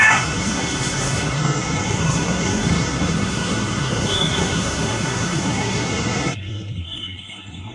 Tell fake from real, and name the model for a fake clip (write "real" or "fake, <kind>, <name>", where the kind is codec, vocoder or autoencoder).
fake, codec, SNAC